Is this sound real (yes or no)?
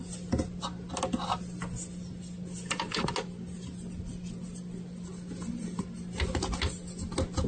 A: yes